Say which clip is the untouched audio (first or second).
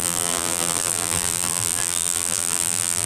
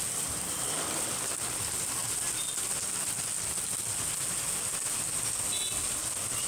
second